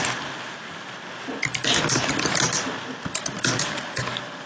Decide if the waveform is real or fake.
real